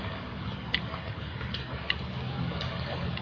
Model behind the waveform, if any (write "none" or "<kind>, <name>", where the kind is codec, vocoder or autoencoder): codec, DAC